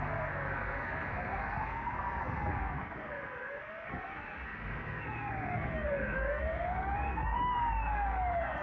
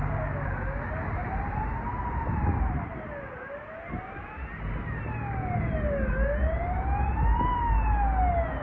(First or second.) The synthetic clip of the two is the first